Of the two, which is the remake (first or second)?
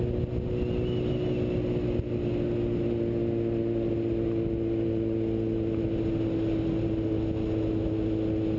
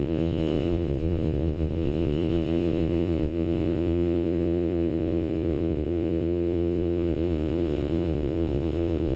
second